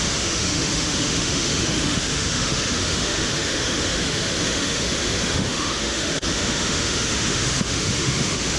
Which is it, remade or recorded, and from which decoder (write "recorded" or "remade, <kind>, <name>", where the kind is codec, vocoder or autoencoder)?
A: remade, autoencoder, DAC-VAE